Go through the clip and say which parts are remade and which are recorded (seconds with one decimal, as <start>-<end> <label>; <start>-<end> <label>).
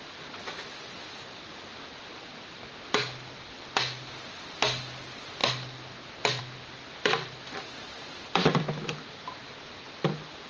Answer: 0.0-10.5 recorded